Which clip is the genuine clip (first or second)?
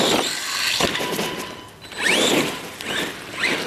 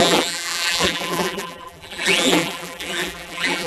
first